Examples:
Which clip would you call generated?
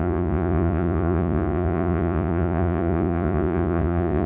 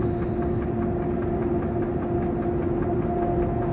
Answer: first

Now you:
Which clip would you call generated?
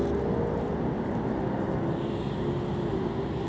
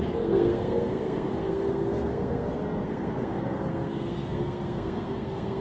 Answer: second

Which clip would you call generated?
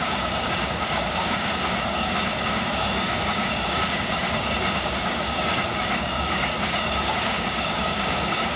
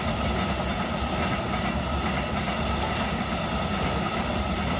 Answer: first